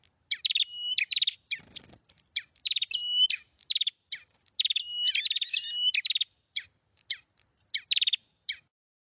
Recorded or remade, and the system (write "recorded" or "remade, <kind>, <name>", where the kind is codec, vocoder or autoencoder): recorded